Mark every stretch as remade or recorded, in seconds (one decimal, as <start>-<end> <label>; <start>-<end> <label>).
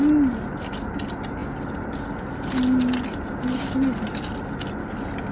0.0-5.3 recorded